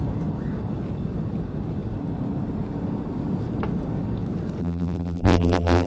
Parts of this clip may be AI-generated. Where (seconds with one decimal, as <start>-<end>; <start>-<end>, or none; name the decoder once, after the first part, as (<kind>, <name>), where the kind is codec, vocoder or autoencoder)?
4.6-5.9 (vocoder, BigVGAN v2)